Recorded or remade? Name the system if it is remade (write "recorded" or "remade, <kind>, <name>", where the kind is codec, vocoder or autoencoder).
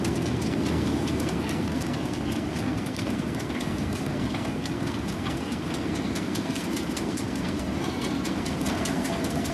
remade, codec, SNAC